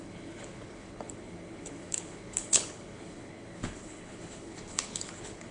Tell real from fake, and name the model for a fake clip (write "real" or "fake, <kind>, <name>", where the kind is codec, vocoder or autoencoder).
fake, codec, HILCodec